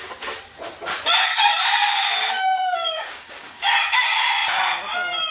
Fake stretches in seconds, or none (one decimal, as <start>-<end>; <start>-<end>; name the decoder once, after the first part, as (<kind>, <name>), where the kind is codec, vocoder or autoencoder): 1.3-3.6 (codec, DAC)